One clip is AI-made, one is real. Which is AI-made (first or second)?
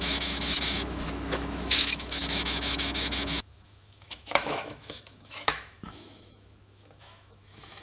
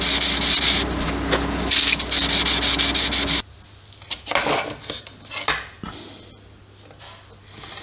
first